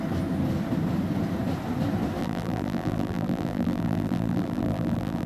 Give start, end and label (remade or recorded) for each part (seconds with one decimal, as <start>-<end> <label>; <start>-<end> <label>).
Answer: 0.0-2.2 recorded; 2.2-5.3 remade